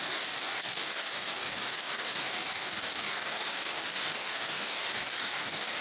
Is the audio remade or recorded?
remade